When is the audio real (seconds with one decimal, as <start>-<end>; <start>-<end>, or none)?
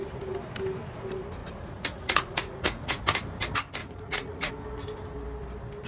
0.0-1.4; 3.0-3.8; 4.5-5.9